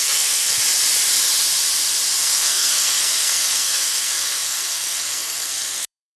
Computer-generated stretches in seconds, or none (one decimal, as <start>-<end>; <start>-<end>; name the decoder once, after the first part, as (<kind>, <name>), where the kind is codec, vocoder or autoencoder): 0.0-0.6 (codec, SNAC); 2.2-6.2

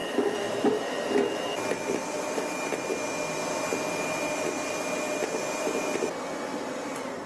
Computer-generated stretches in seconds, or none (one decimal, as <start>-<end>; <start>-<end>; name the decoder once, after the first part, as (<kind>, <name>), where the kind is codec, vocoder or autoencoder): 0.0-0.5 (autoencoder, DAC-VAE)

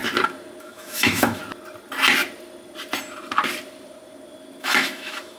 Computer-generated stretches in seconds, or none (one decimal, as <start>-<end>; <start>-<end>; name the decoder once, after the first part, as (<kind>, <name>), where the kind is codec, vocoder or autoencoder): 0.6-1.4 (autoencoder, DAC-VAE); 4.6-5.4

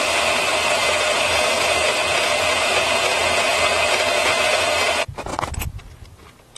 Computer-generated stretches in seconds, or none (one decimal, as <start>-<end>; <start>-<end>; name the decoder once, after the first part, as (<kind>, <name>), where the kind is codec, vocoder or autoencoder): 0.8-4.7 (vocoder, Vocos)

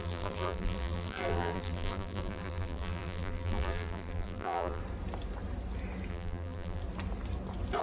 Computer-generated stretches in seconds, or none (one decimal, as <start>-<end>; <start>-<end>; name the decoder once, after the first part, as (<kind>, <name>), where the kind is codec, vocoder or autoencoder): 0.0-4.8 (vocoder, BigVGAN v2); 6.1-6.8

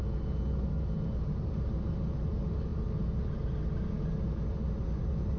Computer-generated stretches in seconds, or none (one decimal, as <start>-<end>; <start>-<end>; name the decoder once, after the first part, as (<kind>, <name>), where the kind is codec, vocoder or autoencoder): none

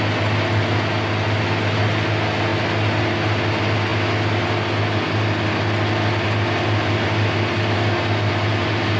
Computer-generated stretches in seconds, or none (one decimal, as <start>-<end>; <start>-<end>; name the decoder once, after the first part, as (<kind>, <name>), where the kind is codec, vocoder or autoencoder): none